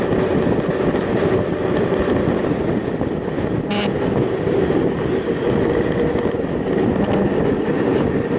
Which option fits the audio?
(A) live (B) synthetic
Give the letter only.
A